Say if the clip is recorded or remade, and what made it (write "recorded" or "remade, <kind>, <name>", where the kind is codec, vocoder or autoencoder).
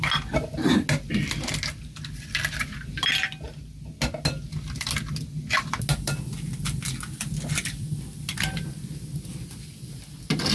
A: recorded